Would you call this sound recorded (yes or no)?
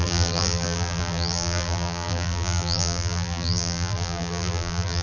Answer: no